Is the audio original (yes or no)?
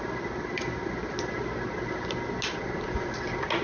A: yes